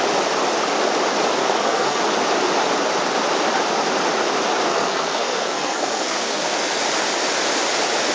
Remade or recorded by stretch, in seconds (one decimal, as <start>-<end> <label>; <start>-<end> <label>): 0.0-1.4 recorded; 1.4-2.0 remade; 2.0-4.7 recorded; 4.7-6.8 remade; 6.8-8.1 recorded